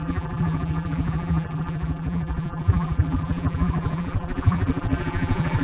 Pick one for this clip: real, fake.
fake